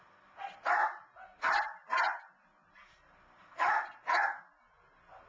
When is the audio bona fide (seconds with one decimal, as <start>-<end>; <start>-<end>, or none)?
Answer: 0.0-3.4; 4.4-5.3